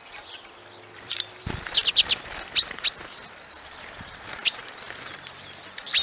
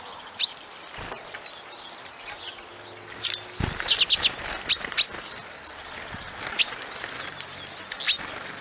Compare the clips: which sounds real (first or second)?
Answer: second